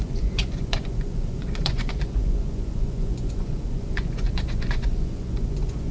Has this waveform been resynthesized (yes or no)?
yes